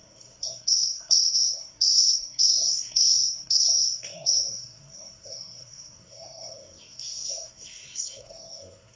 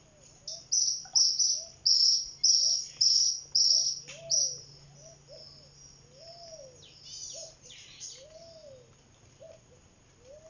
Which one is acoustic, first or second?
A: second